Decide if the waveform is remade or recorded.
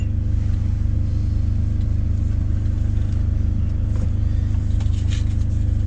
recorded